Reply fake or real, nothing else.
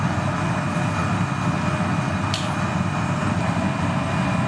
real